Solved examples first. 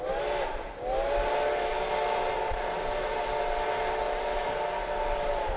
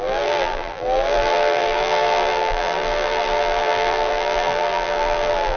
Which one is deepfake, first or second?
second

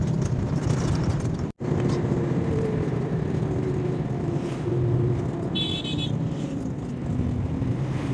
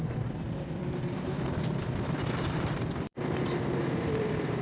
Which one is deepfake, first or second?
second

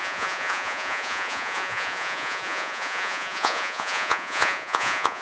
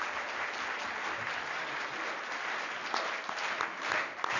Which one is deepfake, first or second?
first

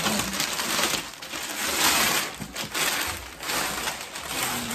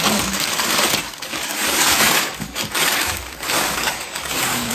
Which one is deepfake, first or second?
second